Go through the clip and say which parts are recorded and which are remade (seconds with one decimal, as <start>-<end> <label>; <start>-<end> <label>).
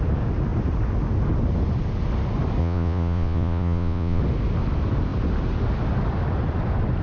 0.0-2.6 recorded; 2.6-4.2 remade; 4.2-7.0 recorded